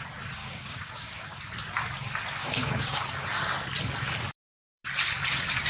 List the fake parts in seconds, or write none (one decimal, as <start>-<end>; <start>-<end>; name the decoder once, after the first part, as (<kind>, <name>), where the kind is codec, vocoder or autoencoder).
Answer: 0.4-1.4 (codec, DAC); 2.4-3.0